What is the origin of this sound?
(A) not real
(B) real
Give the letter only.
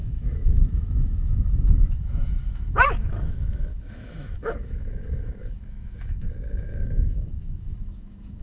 A